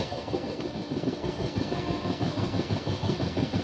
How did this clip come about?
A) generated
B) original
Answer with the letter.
A